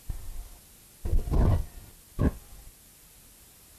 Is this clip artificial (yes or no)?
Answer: no